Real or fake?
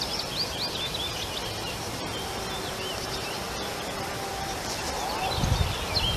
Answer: real